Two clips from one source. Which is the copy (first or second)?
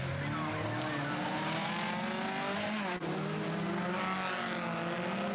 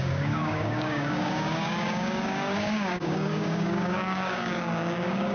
second